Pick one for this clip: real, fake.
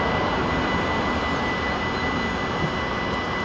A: real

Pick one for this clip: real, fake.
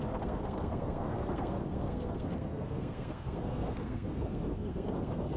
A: fake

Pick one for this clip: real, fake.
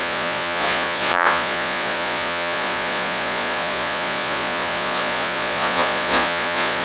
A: fake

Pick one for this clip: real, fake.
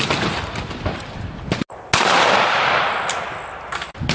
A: real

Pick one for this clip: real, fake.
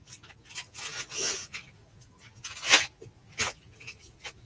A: fake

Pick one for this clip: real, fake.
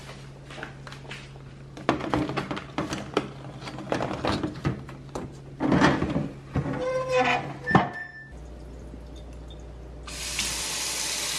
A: real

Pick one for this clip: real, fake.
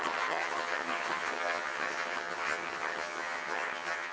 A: fake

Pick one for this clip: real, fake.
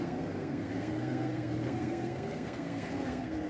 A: fake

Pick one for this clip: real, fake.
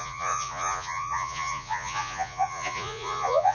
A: fake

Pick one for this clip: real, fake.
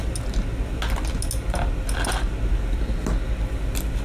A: real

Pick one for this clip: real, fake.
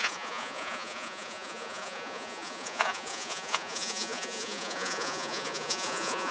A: fake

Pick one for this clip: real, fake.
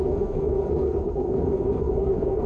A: fake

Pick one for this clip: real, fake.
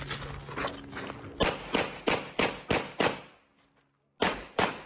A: real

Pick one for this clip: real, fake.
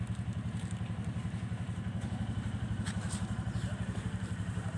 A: fake